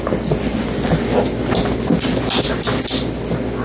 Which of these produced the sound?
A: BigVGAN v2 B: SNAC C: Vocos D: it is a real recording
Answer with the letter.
D